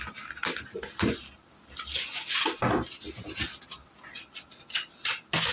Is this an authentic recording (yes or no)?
yes